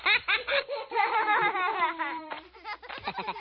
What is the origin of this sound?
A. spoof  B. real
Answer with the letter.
A